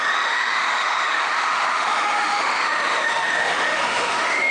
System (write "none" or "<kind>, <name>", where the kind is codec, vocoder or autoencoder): autoencoder, DAC-VAE